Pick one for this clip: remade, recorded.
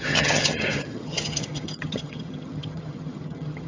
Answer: remade